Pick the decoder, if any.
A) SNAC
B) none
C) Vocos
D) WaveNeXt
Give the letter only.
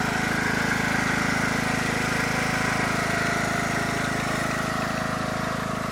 B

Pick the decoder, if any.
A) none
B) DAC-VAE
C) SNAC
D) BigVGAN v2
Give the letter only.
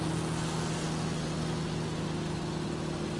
A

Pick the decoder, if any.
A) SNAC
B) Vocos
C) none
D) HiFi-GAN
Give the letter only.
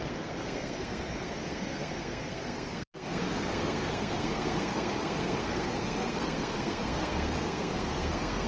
A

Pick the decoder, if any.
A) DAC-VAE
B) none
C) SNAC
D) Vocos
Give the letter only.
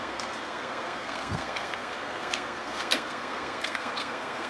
C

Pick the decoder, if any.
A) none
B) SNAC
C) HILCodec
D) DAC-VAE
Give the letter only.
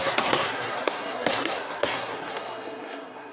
B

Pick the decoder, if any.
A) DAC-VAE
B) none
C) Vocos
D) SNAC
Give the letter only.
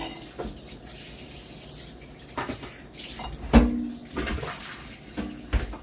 B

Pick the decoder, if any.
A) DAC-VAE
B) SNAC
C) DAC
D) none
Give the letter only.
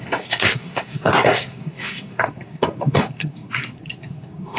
B